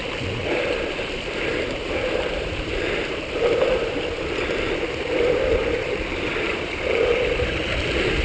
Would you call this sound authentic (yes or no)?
no